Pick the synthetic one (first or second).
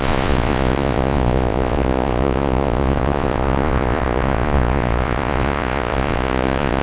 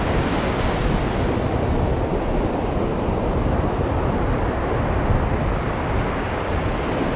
first